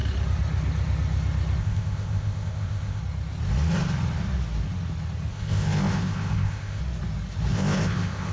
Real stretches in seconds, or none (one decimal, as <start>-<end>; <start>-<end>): 0.0-1.6; 3.0-5.3; 6.8-7.5